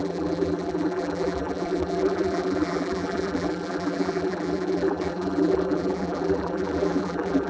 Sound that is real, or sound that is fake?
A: fake